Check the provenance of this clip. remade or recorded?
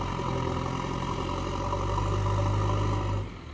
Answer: recorded